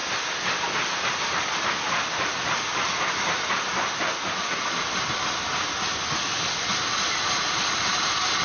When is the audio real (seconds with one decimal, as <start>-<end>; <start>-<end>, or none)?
0.0-8.4